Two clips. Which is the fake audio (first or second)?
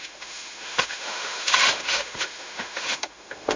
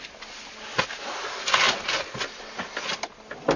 first